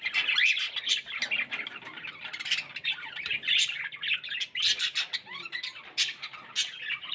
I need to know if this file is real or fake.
real